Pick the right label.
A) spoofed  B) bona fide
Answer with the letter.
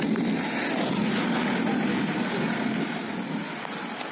B